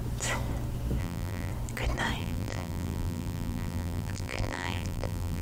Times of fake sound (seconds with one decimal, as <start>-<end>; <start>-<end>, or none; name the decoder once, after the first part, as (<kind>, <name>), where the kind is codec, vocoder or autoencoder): 1.0-1.5 (vocoder, BigVGAN v2); 2.2-5.4